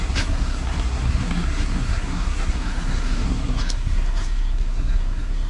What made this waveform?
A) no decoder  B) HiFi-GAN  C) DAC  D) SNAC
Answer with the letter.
D